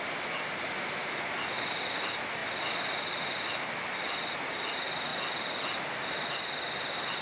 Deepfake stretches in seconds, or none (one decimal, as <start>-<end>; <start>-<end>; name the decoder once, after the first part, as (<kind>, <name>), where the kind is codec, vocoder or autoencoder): none